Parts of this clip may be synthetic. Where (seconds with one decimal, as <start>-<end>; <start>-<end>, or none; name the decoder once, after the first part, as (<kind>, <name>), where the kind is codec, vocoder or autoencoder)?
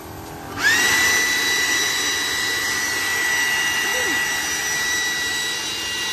none